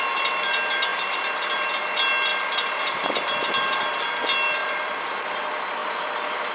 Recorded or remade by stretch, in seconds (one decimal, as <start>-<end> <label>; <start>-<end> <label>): 0.0-0.9 recorded; 0.9-1.7 remade; 1.7-2.3 recorded; 2.3-4.0 remade; 4.0-4.6 recorded; 4.6-5.2 remade; 5.2-5.8 recorded; 5.8-6.5 remade